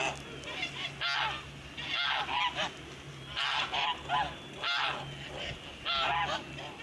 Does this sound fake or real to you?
real